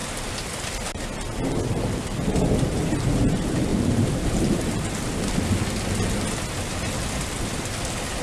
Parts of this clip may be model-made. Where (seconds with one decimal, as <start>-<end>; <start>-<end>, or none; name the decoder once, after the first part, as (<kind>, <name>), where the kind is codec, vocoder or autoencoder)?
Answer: 3.7-5.2 (vocoder, BigVGAN v2)